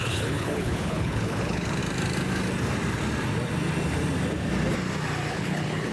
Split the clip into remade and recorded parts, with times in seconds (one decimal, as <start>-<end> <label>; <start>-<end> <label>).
0.0-1.8 remade; 1.8-5.3 recorded; 5.3-5.9 remade